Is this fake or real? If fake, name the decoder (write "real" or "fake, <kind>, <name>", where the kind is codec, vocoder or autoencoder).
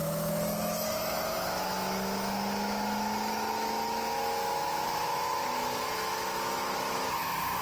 fake, autoencoder, DAC-VAE